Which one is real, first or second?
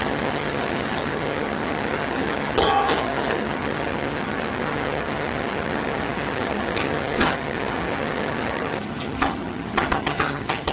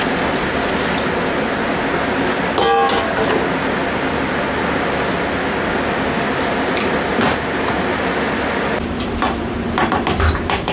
second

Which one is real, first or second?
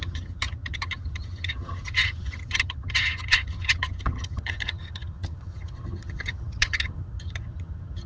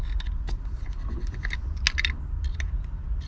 second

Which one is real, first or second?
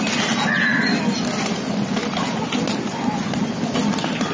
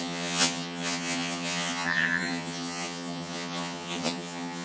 first